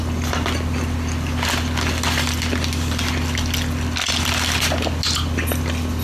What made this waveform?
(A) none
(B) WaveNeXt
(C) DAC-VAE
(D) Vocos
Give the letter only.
A